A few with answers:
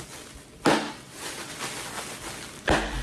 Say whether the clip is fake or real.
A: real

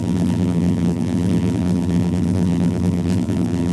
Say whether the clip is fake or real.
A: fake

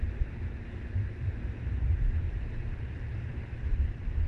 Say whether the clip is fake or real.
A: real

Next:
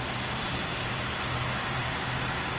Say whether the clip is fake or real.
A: fake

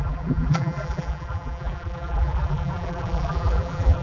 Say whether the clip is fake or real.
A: fake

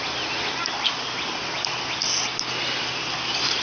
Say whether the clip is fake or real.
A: real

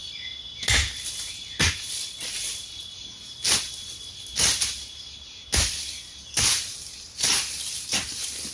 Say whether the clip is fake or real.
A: real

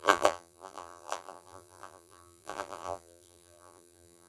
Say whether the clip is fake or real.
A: fake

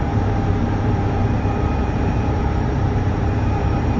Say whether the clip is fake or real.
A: fake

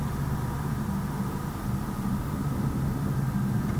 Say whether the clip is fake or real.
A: real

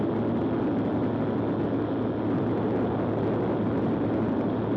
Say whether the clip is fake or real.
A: real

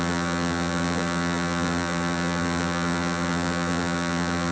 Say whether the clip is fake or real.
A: fake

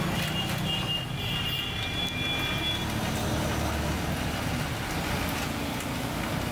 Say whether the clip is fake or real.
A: real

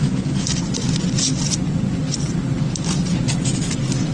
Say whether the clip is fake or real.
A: real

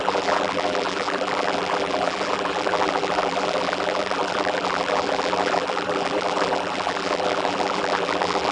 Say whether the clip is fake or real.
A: fake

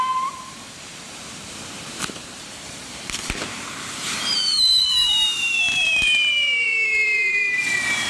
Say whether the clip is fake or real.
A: fake